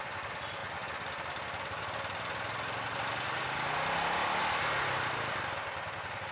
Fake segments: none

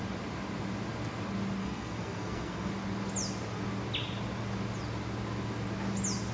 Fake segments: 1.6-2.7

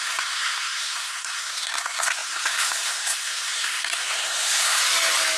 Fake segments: 0.0-4.8